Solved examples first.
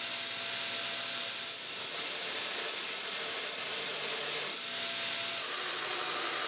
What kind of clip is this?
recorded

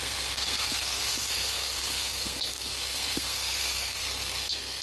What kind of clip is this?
remade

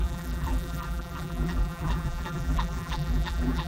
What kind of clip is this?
remade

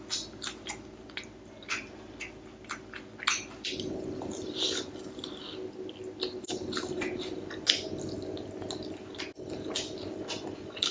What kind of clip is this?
recorded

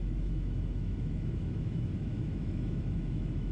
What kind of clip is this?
remade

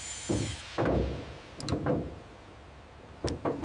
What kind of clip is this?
recorded